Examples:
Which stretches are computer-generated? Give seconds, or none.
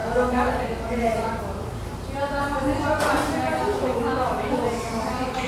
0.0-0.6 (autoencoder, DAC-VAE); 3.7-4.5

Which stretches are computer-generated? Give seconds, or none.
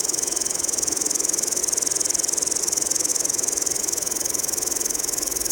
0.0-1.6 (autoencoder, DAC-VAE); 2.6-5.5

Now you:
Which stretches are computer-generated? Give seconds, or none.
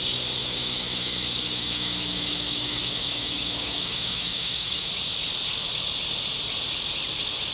0.4-4.9 (autoencoder, DAC-VAE)